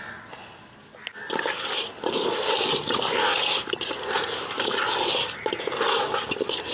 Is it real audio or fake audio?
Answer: real